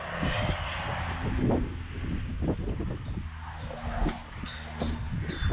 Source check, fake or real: real